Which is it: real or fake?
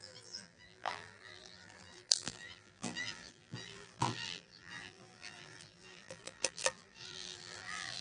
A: fake